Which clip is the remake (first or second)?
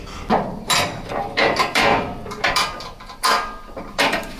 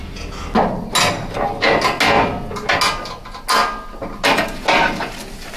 first